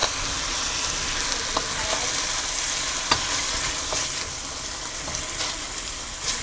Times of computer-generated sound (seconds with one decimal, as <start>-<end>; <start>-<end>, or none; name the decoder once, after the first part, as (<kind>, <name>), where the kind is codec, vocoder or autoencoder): none